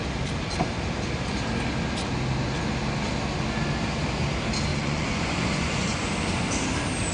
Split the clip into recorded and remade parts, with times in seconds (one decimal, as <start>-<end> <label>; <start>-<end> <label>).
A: 0.0-4.7 recorded; 4.7-6.1 remade; 6.1-7.1 recorded